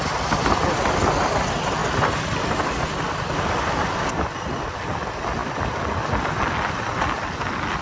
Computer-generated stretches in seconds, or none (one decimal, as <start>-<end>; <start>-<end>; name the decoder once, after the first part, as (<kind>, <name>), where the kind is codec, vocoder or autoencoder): none